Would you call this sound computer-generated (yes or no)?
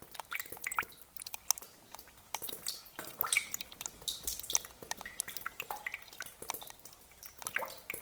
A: no